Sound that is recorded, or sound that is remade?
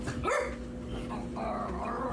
recorded